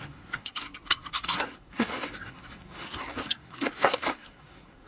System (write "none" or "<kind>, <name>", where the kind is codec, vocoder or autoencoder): codec, SNAC